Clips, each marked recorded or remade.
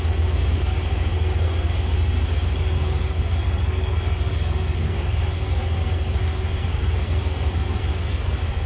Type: remade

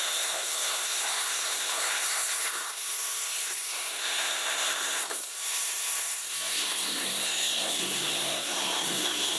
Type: remade